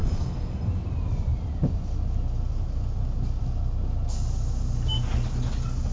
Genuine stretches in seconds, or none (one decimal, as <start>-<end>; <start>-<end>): 0.7-5.9